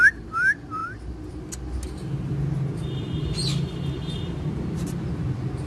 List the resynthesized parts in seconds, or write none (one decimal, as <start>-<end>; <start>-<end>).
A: none